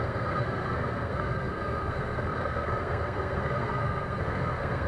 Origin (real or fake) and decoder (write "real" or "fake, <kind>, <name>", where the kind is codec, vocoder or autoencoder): fake, codec, SNAC